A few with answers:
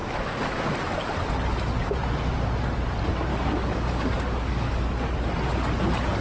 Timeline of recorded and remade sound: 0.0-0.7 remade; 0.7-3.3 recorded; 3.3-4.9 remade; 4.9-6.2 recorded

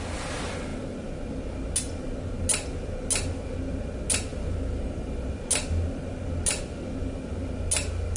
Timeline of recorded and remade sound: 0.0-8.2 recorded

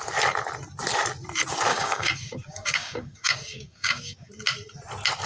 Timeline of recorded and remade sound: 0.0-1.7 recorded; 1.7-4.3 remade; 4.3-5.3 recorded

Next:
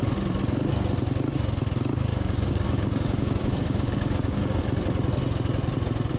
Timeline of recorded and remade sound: 0.0-2.1 recorded; 2.1-4.6 remade; 4.6-6.2 recorded

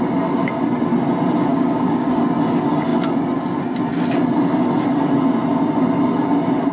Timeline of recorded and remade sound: 0.0-1.5 recorded; 1.5-2.2 remade; 2.2-6.7 recorded

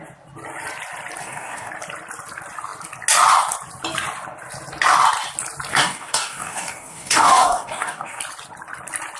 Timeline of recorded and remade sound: 0.0-1.2 recorded; 1.2-1.7 remade; 1.7-5.7 recorded; 5.7-8.2 remade; 8.2-9.2 recorded